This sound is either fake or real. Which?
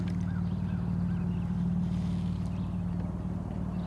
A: real